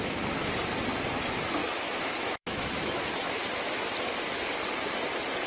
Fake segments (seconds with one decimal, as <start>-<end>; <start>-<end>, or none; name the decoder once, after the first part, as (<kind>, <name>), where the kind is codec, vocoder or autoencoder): 1.6-3.9 (autoencoder, DAC-VAE)